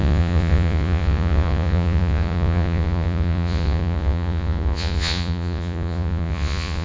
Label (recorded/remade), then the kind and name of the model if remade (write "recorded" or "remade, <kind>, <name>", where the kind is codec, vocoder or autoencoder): remade, vocoder, Vocos